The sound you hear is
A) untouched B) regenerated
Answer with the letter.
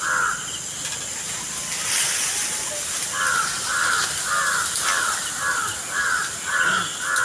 A